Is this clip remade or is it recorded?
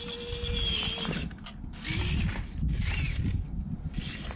recorded